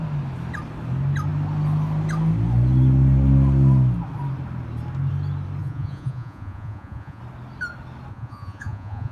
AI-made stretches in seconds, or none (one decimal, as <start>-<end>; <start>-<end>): 5.6-7.2; 8.1-9.1